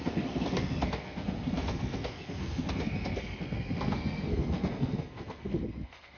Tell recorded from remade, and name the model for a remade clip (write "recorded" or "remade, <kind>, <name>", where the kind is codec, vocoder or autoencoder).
remade, codec, SNAC